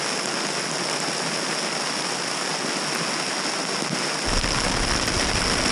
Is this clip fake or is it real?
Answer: real